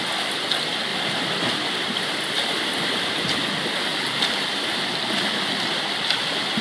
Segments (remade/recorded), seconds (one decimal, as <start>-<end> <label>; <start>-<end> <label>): 0.0-0.9 recorded; 0.9-1.5 remade; 1.5-3.9 recorded; 3.9-4.6 remade; 4.6-6.6 recorded